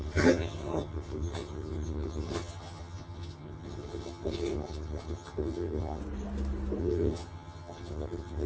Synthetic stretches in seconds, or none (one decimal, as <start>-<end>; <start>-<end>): 0.0-6.0; 6.8-8.5